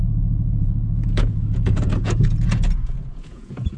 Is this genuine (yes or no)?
no